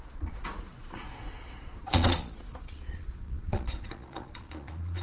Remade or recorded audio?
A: remade